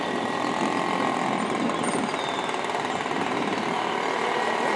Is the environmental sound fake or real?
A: real